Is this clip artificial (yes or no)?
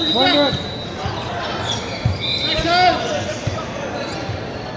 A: no